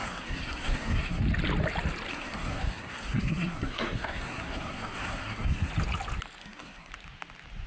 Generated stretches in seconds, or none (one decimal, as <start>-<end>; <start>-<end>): 0.0-1.2; 2.1-5.7; 6.4-6.9